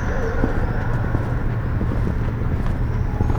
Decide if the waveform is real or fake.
real